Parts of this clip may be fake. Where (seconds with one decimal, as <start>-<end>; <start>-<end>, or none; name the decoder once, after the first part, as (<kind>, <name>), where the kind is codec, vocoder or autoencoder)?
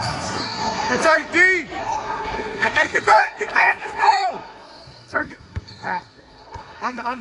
0.0-1.3 (codec, SNAC); 1.8-7.2